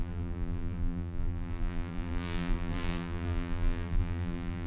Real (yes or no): no